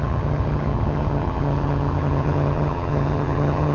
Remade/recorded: remade